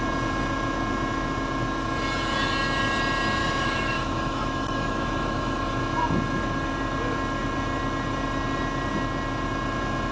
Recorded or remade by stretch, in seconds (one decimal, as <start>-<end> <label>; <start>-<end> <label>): 0.0-3.4 recorded; 3.4-5.8 remade; 5.8-10.1 recorded